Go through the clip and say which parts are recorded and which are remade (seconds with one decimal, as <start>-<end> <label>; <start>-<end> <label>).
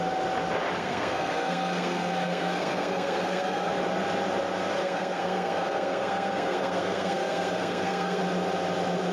0.0-0.8 recorded; 0.8-3.7 remade; 3.7-4.8 recorded; 4.8-8.2 remade; 8.2-9.1 recorded